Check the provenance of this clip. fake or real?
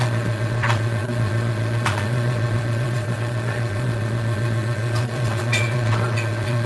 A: fake